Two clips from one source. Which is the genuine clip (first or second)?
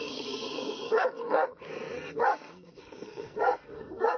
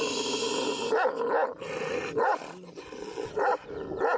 second